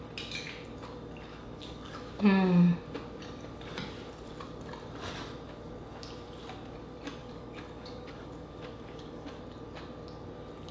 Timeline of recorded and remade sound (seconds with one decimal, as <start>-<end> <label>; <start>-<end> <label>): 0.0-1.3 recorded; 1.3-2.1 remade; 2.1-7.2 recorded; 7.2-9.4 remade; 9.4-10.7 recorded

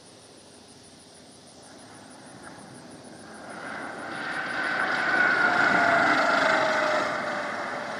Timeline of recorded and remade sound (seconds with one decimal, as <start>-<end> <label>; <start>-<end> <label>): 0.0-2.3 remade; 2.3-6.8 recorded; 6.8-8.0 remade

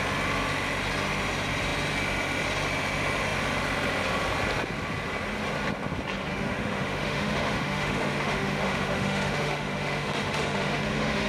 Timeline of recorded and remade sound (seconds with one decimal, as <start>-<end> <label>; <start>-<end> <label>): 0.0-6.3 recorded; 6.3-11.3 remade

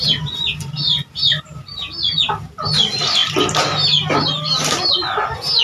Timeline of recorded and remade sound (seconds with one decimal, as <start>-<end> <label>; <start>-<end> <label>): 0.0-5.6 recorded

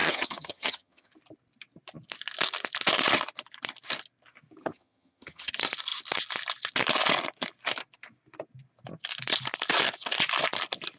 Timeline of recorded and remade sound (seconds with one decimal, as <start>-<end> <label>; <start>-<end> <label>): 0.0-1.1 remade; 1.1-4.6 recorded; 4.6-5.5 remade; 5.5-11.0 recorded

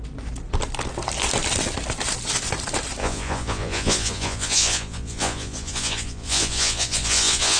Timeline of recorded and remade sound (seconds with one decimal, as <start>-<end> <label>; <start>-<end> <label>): 0.0-3.0 recorded; 3.0-7.6 remade